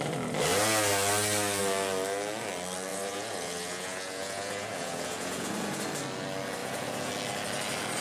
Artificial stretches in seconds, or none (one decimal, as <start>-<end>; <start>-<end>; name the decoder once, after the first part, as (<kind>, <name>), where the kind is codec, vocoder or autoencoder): 2.9-5.8 (vocoder, Vocos); 6.6-7.1